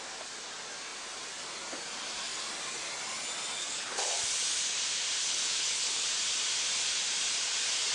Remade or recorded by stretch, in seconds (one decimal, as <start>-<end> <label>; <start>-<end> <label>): 0.0-3.6 recorded; 3.6-4.2 remade; 4.2-5.2 recorded; 5.2-6.1 remade; 6.1-7.9 recorded